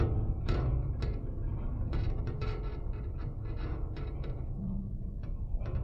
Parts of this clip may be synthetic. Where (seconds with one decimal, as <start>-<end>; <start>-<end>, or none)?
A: 0.0-0.7; 1.6-2.7; 3.5-5.8